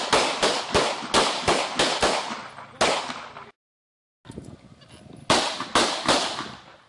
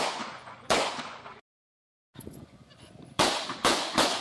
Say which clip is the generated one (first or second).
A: second